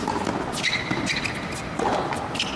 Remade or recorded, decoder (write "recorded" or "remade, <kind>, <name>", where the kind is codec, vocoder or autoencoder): recorded